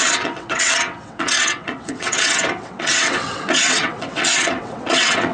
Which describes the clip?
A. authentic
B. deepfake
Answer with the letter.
B